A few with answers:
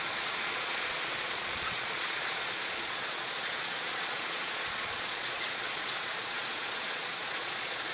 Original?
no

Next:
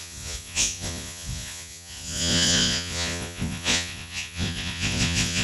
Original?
no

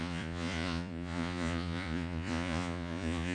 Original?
no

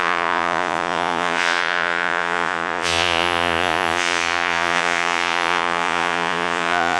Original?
no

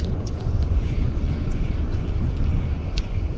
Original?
no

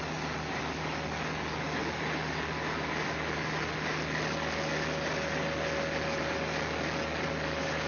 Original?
yes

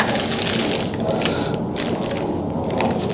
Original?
yes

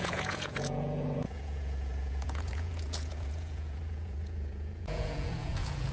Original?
no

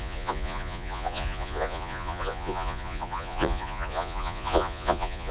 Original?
no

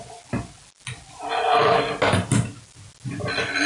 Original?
yes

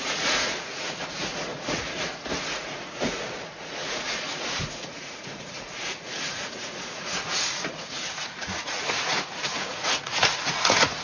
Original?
no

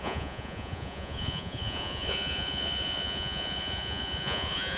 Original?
no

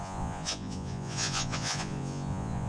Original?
no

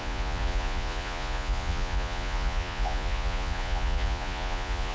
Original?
no